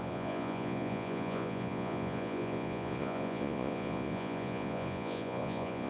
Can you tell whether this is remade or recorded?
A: remade